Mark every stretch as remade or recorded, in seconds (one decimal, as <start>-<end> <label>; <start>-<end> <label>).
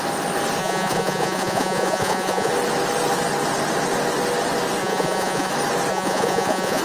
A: 0.0-0.6 recorded; 0.6-2.5 remade; 2.5-4.8 recorded; 4.8-5.5 remade; 5.5-5.9 recorded; 5.9-6.8 remade